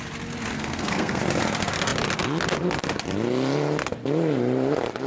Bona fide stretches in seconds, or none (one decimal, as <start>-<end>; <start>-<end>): 0.0-0.5; 1.2-5.1

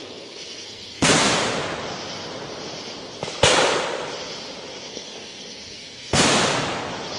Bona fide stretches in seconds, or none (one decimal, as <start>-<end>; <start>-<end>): 1.1-4.9; 6.2-7.2

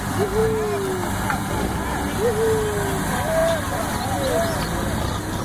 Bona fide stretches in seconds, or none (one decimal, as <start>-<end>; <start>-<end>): 0.0-5.4

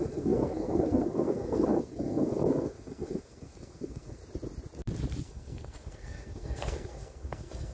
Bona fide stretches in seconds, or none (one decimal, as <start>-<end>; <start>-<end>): 4.2-5.2